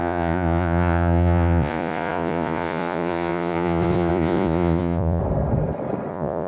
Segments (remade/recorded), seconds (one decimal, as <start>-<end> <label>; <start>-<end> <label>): 0.0-5.2 remade; 5.2-6.1 recorded; 6.1-6.5 remade